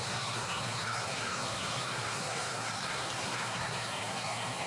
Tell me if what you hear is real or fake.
fake